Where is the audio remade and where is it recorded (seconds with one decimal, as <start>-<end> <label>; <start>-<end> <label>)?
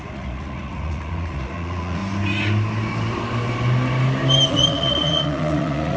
0.0-2.0 remade; 2.0-4.5 recorded; 4.5-6.0 remade